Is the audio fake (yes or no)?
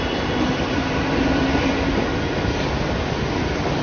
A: no